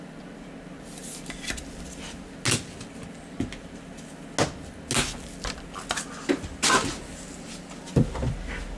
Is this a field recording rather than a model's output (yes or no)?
yes